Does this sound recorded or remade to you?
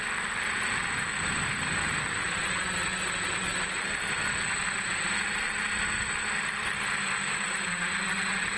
recorded